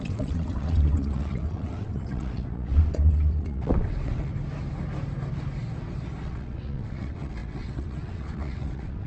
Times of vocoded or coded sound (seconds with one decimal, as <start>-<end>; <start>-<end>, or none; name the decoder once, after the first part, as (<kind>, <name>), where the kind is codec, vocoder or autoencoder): 0.0-4.3 (vocoder, WaveNeXt); 6.2-9.1